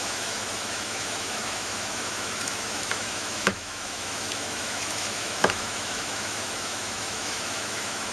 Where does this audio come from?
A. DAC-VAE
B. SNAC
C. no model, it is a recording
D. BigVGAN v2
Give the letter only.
A